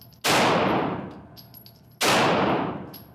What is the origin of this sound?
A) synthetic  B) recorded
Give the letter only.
B